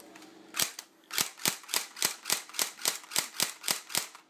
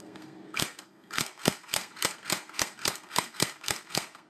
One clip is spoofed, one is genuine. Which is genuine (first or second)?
first